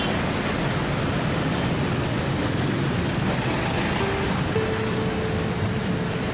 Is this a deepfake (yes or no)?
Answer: no